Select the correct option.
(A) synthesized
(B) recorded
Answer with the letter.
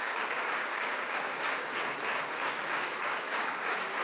A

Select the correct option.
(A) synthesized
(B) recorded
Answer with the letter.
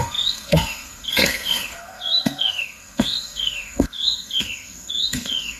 A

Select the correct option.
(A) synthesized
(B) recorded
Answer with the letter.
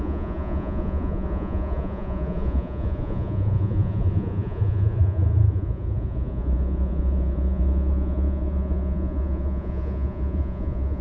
A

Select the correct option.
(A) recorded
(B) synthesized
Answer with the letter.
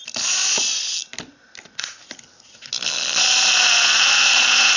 A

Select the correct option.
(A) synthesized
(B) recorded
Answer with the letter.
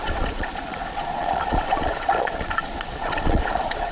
A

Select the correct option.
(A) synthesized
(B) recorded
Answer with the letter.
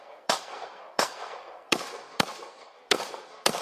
A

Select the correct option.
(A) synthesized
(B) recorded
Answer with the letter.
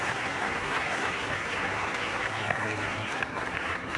A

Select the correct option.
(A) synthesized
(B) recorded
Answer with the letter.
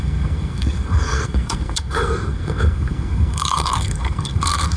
A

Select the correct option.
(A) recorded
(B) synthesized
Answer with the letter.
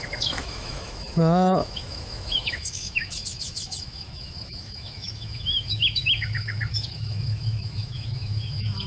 B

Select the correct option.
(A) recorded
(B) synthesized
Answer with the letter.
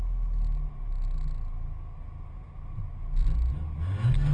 A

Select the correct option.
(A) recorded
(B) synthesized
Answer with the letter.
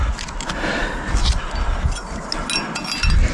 A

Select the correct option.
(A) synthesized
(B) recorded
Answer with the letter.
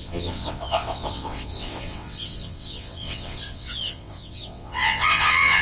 A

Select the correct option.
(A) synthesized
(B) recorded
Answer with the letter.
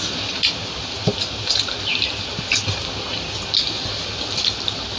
B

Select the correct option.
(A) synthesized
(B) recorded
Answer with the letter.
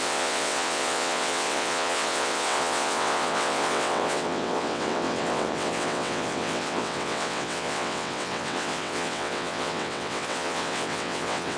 A